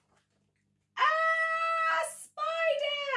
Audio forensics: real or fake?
real